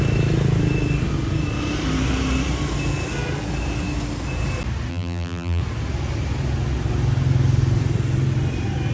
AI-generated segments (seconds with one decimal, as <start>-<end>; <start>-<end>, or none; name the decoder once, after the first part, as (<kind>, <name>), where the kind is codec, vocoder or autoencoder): 4.9-5.6 (vocoder, BigVGAN v2)